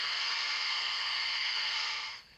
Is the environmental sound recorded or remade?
remade